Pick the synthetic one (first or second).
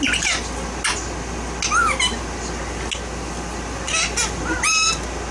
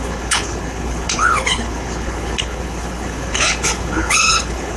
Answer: second